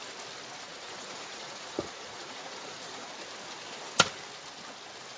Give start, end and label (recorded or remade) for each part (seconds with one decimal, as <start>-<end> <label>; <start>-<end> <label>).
0.0-0.7 recorded; 0.7-3.1 remade; 3.1-5.2 recorded